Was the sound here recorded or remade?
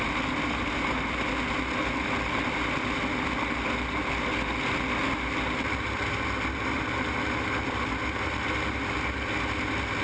recorded